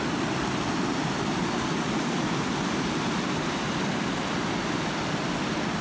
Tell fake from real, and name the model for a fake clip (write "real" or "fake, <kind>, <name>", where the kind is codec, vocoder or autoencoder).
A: real